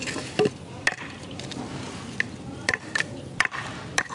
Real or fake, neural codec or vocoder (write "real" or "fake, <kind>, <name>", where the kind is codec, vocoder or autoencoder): real